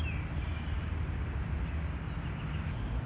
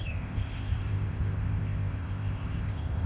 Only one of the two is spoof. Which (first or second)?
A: second